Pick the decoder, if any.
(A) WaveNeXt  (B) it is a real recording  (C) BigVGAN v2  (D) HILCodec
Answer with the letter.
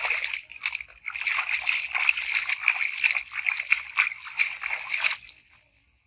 B